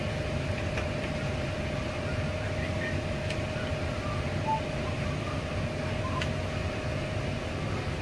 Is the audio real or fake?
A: real